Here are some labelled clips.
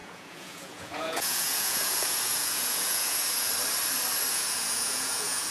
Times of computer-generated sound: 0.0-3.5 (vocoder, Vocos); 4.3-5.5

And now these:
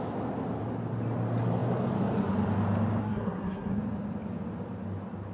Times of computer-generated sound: 3.0-3.8 (codec, SNAC)

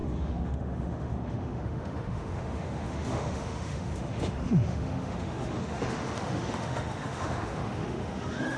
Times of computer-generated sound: 0.0-8.6 (autoencoder, DAC-VAE)

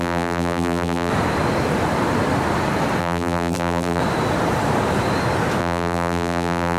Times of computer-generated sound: 0.0-1.1 (vocoder, BigVGAN v2); 3.0-4.0; 5.6-6.8